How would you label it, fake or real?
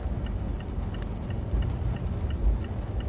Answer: real